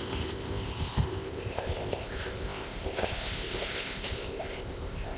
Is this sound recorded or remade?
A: remade